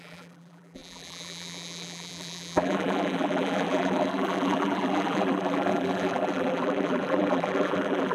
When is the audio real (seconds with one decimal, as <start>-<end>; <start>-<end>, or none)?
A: none